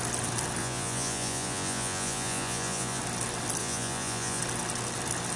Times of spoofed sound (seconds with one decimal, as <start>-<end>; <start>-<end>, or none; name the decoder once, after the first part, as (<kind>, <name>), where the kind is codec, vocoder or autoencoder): 0.6-3.0 (vocoder, Vocos); 3.6-4.4